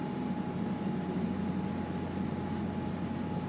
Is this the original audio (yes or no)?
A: yes